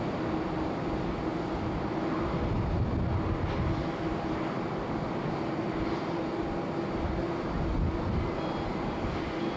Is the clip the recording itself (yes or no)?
yes